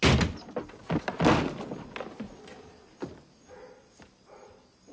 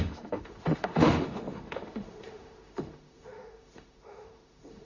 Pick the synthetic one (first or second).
second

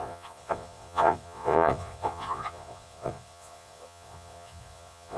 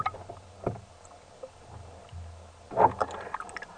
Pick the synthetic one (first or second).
first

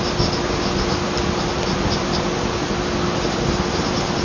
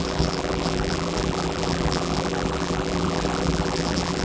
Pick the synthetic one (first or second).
second